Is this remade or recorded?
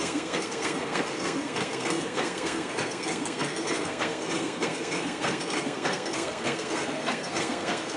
remade